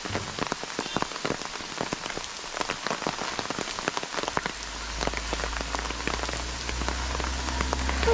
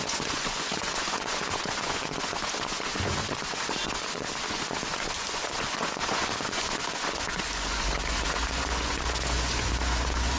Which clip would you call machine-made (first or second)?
second